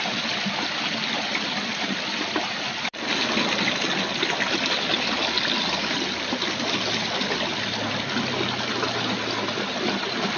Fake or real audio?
real